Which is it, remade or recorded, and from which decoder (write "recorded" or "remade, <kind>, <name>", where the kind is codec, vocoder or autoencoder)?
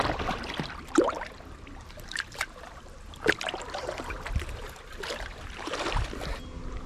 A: recorded